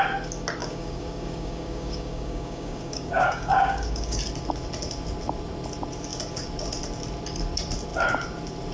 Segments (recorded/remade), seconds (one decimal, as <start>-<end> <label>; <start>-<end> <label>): 0.0-0.6 recorded; 0.6-4.2 remade; 4.2-8.7 recorded